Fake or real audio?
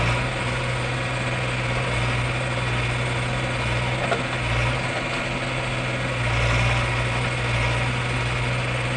real